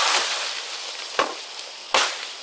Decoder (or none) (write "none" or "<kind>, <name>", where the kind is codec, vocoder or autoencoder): none